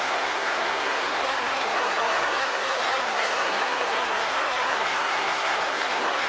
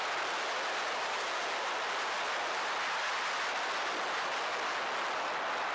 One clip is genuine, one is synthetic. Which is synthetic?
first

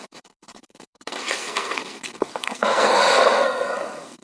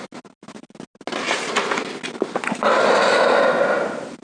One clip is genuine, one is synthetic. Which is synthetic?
first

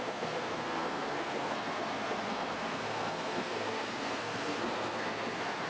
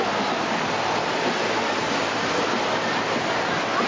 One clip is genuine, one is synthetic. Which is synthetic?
first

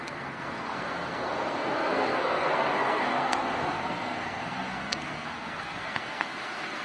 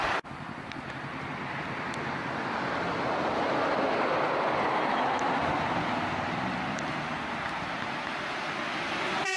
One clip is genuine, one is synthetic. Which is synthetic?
first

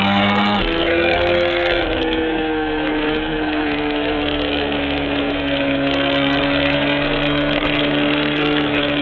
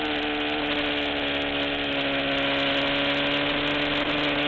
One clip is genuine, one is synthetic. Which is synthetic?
first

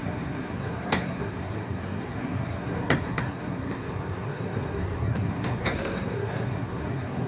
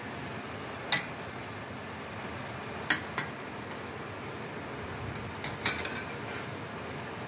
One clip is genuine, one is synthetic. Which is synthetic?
first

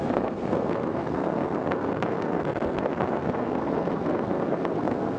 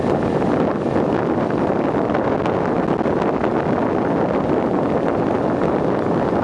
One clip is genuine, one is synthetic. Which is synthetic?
first